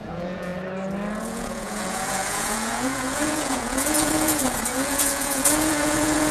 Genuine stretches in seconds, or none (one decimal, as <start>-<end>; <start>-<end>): 0.5-1.2